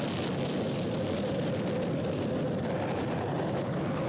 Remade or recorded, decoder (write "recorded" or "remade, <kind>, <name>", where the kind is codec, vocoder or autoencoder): recorded